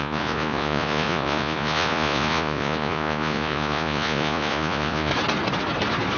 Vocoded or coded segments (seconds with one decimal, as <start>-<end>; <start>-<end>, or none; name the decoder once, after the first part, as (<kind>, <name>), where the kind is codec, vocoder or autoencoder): 0.0-5.1 (vocoder, Vocos)